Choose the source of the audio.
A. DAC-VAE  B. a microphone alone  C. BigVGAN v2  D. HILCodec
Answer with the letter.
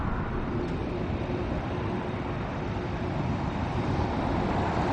B